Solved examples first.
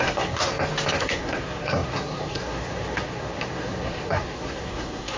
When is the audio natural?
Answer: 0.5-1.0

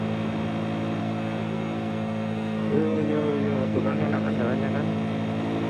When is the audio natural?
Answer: 0.0-1.0; 4.4-5.7

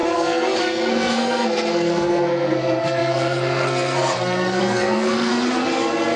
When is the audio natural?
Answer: 5.3-6.2

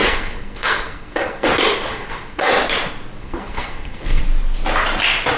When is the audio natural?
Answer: 1.5-1.9; 2.5-3.2; 4.2-5.4

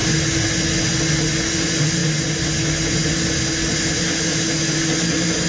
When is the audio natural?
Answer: 0.0-5.5

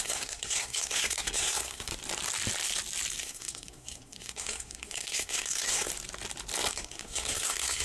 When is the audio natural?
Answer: 1.9-3.2; 5.9-6.7

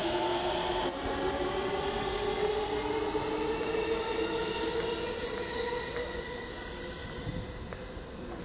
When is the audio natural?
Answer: 0.5-8.4

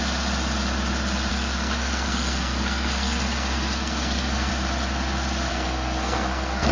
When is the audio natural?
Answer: 0.0-1.3; 4.5-5.5